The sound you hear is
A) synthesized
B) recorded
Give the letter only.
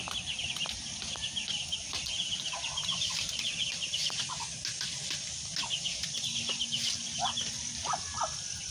B